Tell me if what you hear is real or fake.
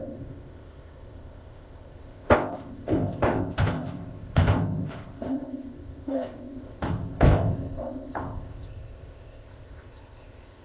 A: fake